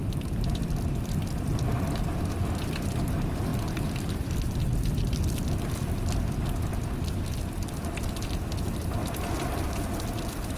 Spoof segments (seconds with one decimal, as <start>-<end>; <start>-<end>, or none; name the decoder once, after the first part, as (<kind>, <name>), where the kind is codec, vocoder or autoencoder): 3.5-5.4 (vocoder, BigVGAN v2)